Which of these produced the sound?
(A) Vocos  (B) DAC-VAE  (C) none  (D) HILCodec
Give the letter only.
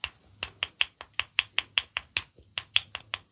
C